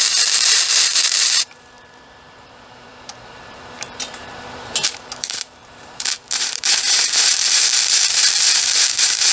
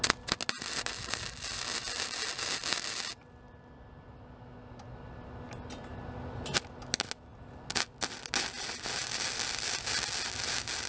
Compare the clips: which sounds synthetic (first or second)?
first